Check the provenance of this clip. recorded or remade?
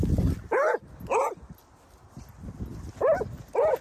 recorded